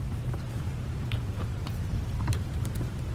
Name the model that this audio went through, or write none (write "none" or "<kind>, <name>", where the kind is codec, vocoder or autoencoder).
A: vocoder, BigVGAN v2